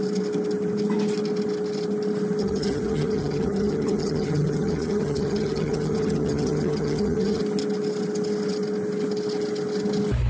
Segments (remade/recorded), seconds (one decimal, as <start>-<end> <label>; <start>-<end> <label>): 0.0-2.4 recorded; 2.4-7.4 remade; 7.4-10.3 recorded